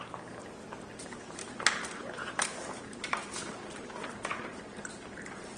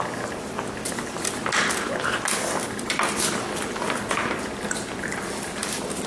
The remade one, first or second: first